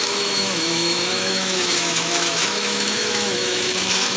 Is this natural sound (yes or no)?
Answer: no